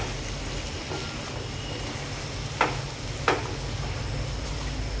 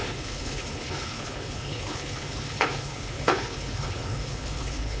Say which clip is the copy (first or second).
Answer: second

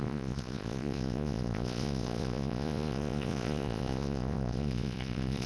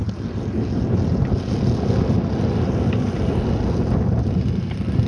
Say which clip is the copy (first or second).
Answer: first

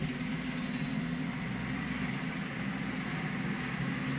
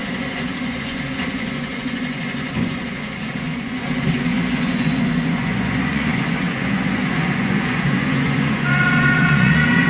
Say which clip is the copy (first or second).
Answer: second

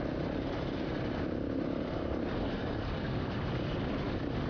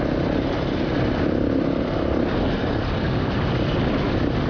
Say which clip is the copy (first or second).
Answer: first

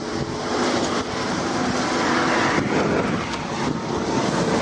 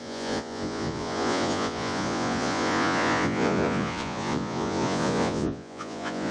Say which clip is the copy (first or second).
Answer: second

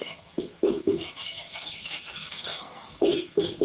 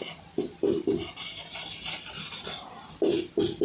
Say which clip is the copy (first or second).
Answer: first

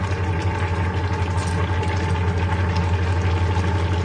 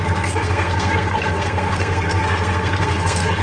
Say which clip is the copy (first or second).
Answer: second